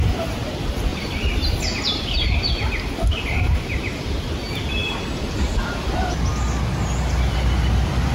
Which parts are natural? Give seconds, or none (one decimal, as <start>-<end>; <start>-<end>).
0.0-0.9; 4.3-4.8; 6.3-8.1